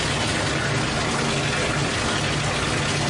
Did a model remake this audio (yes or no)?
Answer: no